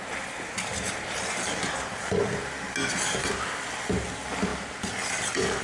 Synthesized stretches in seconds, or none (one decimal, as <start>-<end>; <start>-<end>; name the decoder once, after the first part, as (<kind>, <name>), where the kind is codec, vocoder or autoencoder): none